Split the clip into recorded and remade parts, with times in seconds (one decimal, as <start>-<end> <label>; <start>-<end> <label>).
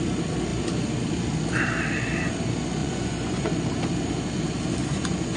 0.0-2.8 recorded; 2.8-3.5 remade; 3.5-4.8 recorded; 4.8-5.4 remade